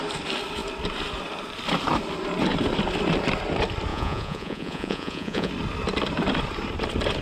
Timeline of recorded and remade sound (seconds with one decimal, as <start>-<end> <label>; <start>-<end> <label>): 0.0-3.9 recorded; 3.9-5.5 remade; 5.5-7.2 recorded